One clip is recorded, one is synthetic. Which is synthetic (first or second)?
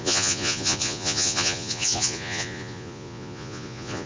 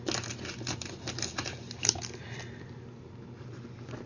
first